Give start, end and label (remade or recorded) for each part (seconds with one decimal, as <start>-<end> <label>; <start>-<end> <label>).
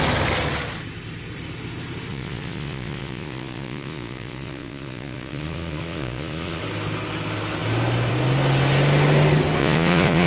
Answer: 0.0-2.1 recorded; 2.1-6.6 remade; 6.6-9.6 recorded; 9.6-10.3 remade